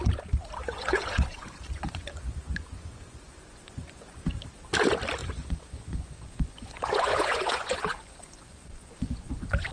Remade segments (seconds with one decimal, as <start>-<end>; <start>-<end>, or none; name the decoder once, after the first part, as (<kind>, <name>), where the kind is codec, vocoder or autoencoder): 0.6-4.3 (vocoder, Vocos); 5.2-9.7